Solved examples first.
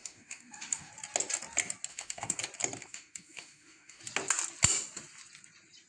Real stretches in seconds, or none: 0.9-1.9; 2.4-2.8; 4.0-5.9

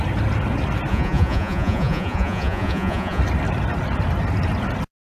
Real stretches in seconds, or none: 0.0-0.9; 3.2-5.2